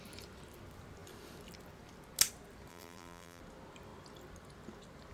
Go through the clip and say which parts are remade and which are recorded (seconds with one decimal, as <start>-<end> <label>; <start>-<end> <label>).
0.0-2.7 recorded; 2.7-3.4 remade; 3.4-5.1 recorded